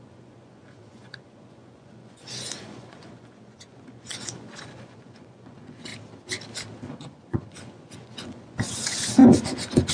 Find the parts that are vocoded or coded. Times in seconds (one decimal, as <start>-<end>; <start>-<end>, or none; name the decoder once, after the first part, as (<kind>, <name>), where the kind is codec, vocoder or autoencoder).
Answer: 0.0-5.9 (vocoder, Vocos); 6.9-9.9